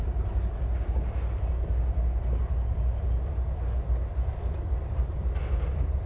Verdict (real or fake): real